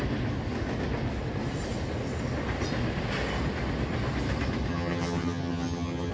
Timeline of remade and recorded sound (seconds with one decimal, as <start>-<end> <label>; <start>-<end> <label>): 0.0-4.7 recorded; 4.7-6.1 remade